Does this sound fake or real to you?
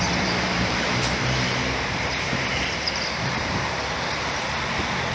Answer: fake